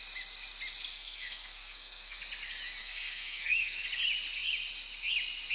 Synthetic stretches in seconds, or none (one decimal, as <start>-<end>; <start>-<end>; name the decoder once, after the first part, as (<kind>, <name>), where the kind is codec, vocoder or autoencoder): 0.9-2.2 (codec, SNAC); 2.8-3.8